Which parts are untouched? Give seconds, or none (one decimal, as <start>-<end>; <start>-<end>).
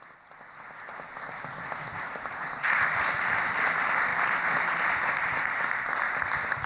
0.0-6.7